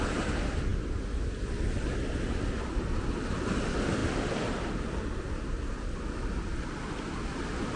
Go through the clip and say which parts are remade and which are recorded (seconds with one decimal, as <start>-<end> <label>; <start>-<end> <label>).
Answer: 0.0-7.8 recorded